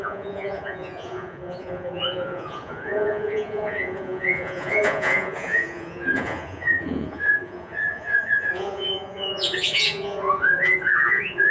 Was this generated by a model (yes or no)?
yes